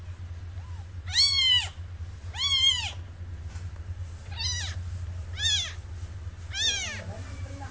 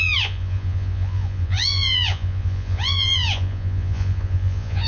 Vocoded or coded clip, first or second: second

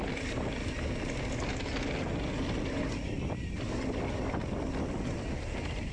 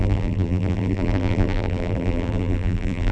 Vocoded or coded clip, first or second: second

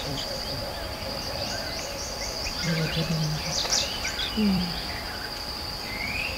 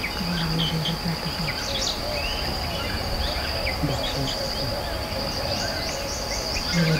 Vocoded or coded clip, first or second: first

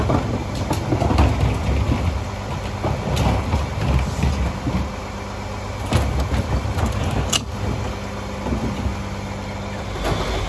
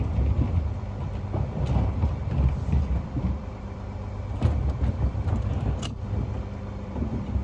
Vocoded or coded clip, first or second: second